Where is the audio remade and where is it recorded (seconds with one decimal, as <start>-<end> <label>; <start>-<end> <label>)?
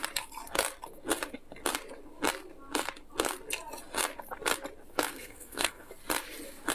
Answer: 0.0-5.1 recorded; 5.1-5.9 remade; 5.9-6.7 recorded